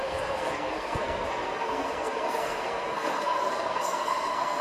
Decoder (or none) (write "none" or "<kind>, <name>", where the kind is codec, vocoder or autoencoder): codec, SNAC